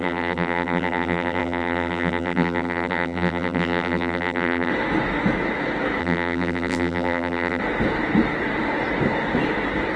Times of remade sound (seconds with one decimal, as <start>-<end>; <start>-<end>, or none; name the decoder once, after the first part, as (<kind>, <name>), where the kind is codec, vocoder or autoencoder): 0.0-4.7 (vocoder, BigVGAN v2); 6.0-7.6